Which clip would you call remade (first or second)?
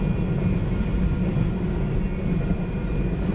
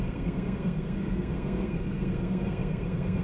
second